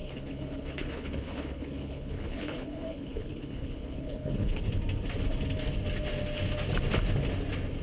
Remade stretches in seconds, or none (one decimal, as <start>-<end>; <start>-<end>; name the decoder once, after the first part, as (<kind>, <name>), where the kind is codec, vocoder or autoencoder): 0.0-4.7 (codec, HILCodec)